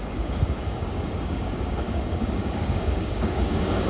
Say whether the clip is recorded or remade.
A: remade